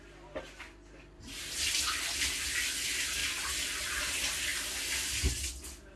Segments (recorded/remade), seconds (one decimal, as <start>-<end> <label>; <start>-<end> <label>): 0.0-3.2 recorded; 3.2-4.0 remade; 4.0-6.0 recorded